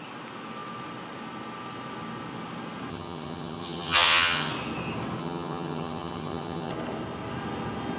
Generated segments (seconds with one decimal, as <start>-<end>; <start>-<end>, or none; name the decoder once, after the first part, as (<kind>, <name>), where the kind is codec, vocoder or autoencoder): 2.9-4.5 (vocoder, HiFi-GAN); 5.2-6.7